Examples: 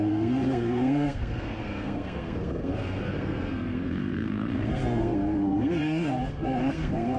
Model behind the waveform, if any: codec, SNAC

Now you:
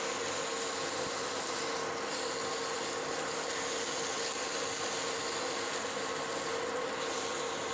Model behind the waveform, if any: none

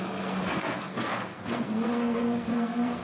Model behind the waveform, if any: codec, SNAC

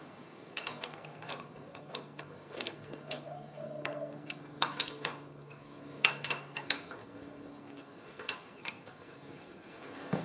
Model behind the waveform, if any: codec, SNAC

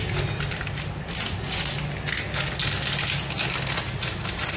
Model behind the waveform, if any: none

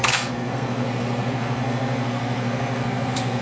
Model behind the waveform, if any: codec, SNAC